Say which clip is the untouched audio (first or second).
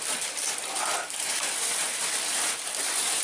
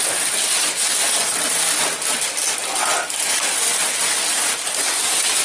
second